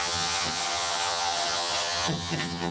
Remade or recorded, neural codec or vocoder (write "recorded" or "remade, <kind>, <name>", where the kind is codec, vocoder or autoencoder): remade, vocoder, HiFi-GAN